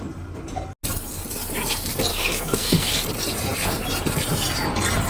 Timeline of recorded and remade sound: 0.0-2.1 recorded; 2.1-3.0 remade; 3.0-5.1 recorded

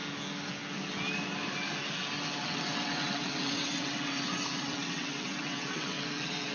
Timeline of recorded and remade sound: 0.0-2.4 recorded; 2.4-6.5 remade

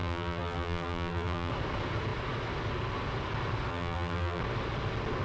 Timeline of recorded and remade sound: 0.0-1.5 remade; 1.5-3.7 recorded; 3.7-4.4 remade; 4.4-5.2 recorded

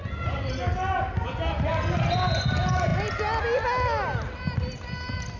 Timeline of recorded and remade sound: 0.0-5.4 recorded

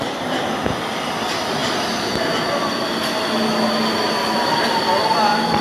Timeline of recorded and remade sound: 0.0-5.6 recorded

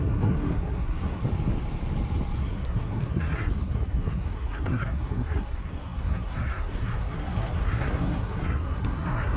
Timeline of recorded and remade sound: 0.0-1.2 remade; 1.2-2.4 recorded; 2.4-9.4 remade

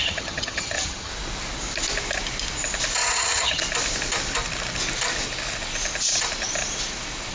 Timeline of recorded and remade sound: 0.0-1.1 remade; 1.1-3.0 recorded; 3.0-3.6 remade; 3.6-7.3 recorded

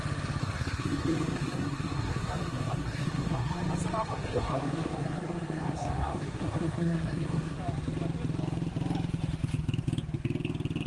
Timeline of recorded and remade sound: 0.0-0.4 recorded; 0.4-3.6 remade; 3.6-4.1 recorded; 4.1-7.6 remade; 7.6-10.9 recorded